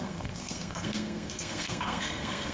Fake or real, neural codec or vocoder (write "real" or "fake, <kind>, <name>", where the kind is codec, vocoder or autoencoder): fake, codec, SNAC